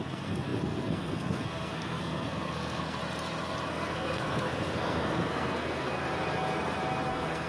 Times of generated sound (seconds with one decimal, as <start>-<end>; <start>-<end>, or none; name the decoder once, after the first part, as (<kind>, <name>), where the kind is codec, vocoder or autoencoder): 0.0-3.0 (codec, SNAC); 3.7-6.0; 7.1-7.5